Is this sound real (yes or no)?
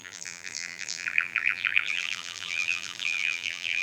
no